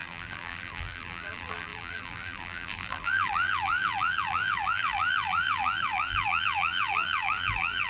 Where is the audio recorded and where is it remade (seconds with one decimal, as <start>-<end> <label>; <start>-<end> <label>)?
0.0-7.9 remade